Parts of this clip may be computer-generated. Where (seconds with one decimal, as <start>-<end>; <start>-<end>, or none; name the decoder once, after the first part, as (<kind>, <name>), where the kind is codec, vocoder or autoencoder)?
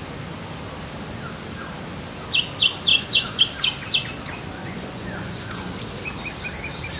2.9-3.4 (vocoder, Vocos); 4.6-5.7